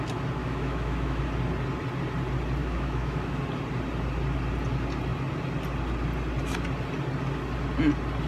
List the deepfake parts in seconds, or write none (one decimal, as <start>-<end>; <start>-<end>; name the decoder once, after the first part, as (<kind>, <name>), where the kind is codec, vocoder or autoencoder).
0.4-1.2 (autoencoder, DAC-VAE); 2.6-3.4